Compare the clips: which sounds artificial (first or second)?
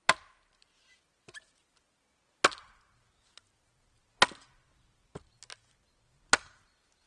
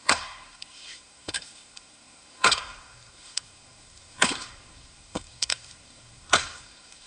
second